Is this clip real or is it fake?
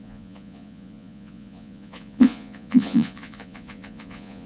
fake